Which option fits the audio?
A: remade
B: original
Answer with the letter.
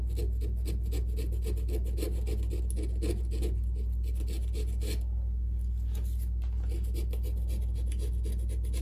B